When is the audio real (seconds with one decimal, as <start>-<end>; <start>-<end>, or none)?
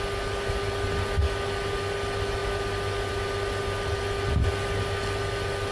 0.0-5.7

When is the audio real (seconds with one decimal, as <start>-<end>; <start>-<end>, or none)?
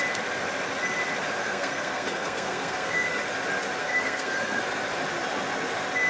0.0-1.4; 3.2-3.8; 4.6-6.1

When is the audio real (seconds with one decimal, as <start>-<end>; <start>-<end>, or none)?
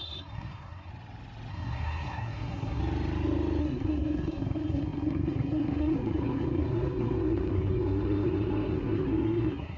0.9-1.5; 2.8-3.6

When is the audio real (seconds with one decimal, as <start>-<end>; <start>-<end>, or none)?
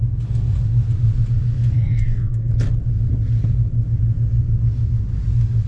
0.0-1.6; 2.5-5.7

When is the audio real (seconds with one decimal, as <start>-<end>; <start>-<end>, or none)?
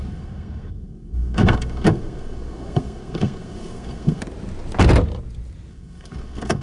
4.2-5.7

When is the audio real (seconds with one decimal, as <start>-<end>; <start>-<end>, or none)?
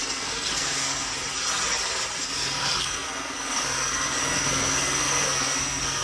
1.1-2.2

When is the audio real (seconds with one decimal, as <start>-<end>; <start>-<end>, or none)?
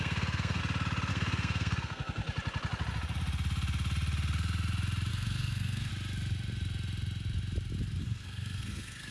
0.6-1.1; 2.2-5.1; 5.9-8.0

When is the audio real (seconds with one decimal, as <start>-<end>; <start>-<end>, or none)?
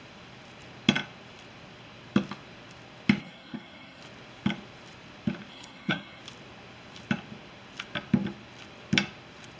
0.0-3.2; 4.0-5.5; 6.2-9.6